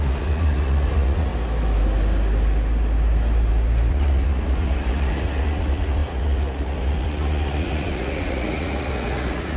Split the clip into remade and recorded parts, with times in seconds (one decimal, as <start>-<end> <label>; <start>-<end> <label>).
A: 0.0-1.3 remade; 1.3-3.9 recorded; 3.9-9.6 remade